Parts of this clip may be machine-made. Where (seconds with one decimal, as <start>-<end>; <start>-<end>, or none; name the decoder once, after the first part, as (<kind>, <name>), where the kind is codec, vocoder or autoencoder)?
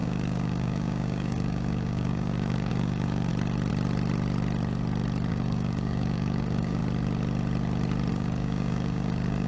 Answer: 0.0-3.3 (codec, DAC); 5.3-6.8; 8.1-9.5